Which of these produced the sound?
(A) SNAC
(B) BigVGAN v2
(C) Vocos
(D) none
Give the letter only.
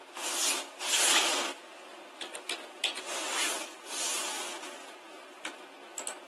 D